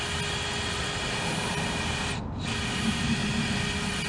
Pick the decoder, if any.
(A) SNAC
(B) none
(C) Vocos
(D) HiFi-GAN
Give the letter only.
B